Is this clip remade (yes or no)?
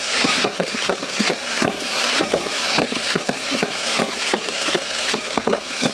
yes